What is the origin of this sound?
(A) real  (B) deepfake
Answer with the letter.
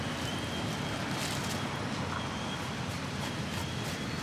A